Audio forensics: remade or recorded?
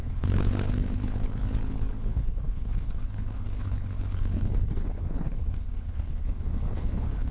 remade